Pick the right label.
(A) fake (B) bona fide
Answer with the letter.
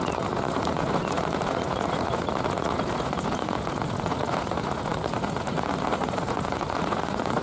A